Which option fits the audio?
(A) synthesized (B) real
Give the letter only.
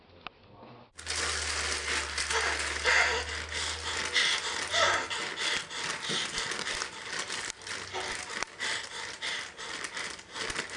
B